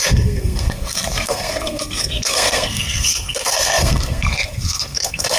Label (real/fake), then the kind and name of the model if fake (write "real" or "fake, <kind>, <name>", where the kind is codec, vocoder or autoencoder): fake, codec, SNAC